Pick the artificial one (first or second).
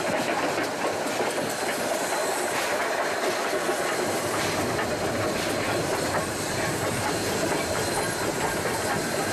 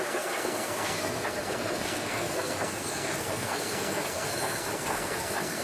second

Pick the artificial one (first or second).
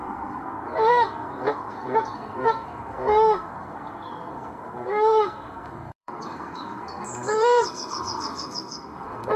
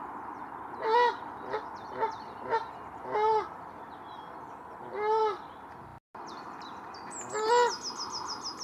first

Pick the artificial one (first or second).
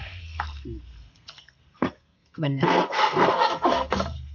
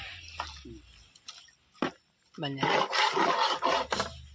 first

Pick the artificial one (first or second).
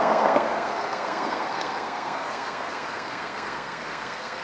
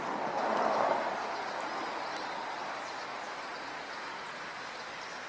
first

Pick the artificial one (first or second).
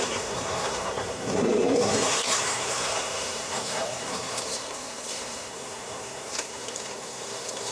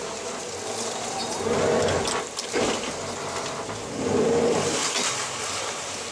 first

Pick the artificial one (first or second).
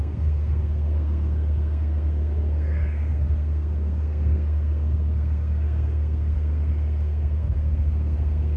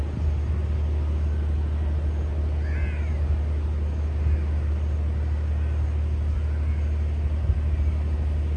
first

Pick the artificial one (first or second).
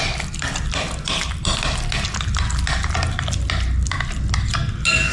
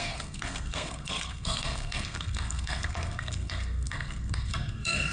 second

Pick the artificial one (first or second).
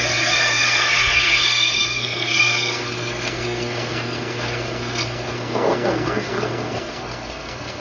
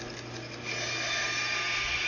first